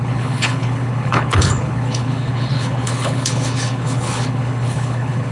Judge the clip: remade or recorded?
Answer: remade